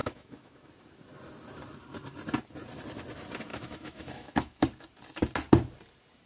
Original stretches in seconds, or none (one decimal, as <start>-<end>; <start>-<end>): 0.7-3.5; 4.6-6.3